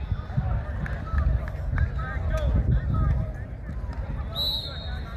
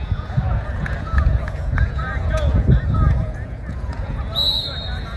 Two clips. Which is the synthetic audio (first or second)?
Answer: second